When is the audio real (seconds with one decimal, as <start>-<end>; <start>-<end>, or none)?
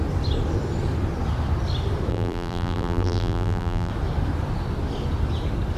0.0-2.1; 3.9-5.8